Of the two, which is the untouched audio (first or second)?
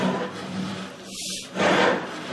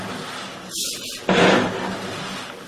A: first